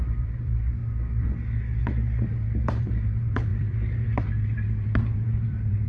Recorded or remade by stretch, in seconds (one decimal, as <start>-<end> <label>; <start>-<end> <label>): 0.0-0.8 remade; 0.8-1.8 recorded; 1.8-5.9 remade